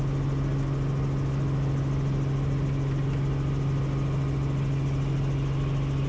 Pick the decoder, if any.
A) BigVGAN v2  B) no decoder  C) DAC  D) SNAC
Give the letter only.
B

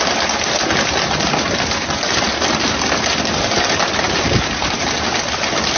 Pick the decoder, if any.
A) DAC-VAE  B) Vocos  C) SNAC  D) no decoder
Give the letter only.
D